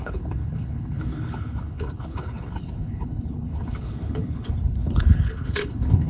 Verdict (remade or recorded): remade